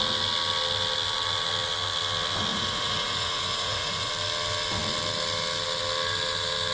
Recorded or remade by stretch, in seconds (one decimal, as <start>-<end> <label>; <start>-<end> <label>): 0.0-2.5 recorded; 2.5-4.1 remade; 4.1-6.7 recorded